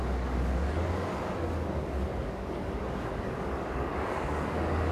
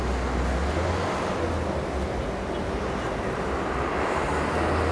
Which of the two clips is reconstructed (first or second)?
first